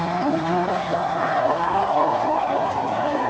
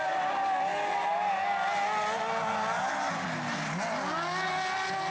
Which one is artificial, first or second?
first